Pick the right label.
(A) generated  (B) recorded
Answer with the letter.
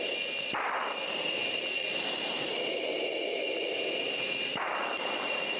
B